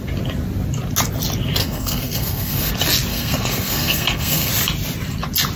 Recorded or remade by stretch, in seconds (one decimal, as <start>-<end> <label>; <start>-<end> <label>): 0.0-1.6 recorded; 1.6-2.7 remade; 2.7-3.1 recorded; 3.1-4.5 remade; 4.5-5.6 recorded

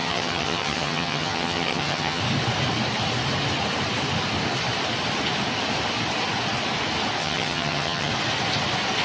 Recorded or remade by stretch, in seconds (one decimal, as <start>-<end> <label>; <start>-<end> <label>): 0.0-2.2 remade; 2.2-7.2 recorded; 7.2-8.1 remade; 8.1-9.0 recorded

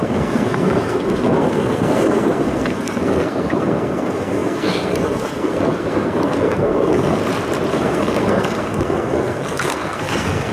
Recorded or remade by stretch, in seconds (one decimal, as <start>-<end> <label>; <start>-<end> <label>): 0.0-7.2 remade; 7.2-7.7 recorded; 7.7-10.5 remade

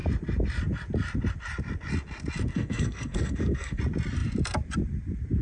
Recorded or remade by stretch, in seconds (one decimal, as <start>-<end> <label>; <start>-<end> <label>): 0.0-2.5 recorded; 2.5-3.8 remade; 3.8-5.4 recorded

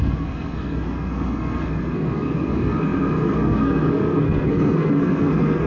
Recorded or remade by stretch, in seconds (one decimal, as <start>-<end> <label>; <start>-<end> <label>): 0.0-5.7 remade

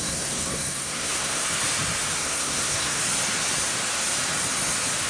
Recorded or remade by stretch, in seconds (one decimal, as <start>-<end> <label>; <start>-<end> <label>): 0.0-1.4 remade; 1.4-2.2 recorded; 2.2-3.0 remade; 3.0-5.1 recorded